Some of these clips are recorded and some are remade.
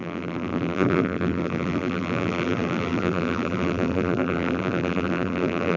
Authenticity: remade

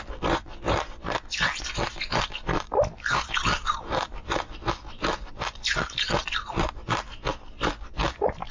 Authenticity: recorded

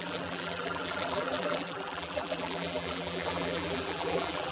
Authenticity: remade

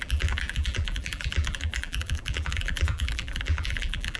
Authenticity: remade